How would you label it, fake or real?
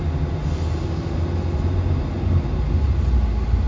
real